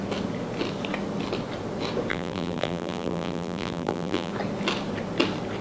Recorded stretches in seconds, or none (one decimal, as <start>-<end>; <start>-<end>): 0.0-2.1; 4.3-5.6